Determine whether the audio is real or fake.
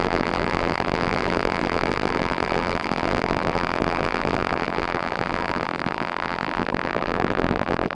fake